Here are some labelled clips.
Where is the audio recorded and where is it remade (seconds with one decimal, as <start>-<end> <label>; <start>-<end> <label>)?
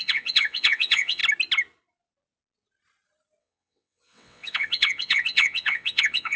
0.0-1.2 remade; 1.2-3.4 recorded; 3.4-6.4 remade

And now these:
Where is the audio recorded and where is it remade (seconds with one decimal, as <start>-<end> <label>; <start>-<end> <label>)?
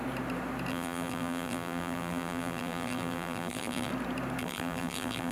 0.0-0.7 recorded; 0.7-3.9 remade; 3.9-4.4 recorded; 4.4-5.3 remade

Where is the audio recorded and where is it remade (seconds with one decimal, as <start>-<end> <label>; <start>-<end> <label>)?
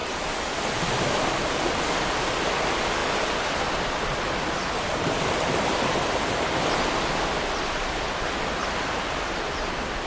0.0-8.6 remade; 8.6-9.3 recorded; 9.3-10.1 remade